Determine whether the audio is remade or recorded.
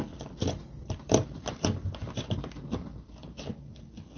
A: recorded